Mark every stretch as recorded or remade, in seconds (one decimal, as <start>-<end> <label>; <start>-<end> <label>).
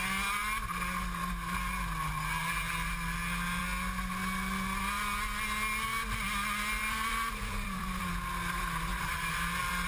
0.0-6.8 recorded; 6.8-8.0 remade; 8.0-8.9 recorded; 8.9-9.9 remade